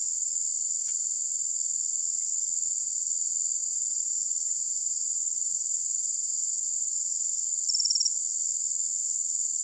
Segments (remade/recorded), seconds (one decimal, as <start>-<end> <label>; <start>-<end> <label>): 0.0-3.6 recorded; 3.6-7.3 remade; 7.3-9.6 recorded